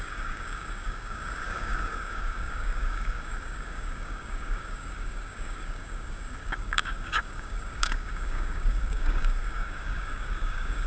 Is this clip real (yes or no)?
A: no